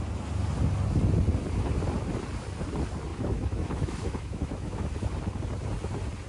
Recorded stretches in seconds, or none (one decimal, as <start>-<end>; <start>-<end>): 0.0-3.1; 4.8-6.3